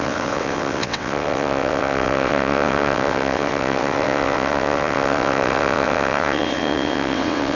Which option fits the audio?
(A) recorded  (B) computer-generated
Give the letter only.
B